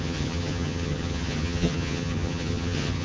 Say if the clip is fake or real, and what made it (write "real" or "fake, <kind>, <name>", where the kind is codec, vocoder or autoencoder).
fake, vocoder, HiFi-GAN